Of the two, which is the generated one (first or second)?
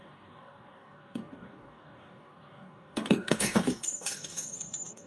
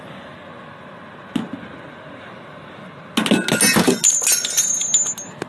first